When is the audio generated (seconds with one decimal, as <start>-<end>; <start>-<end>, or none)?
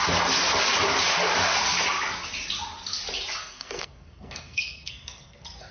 3.4-5.7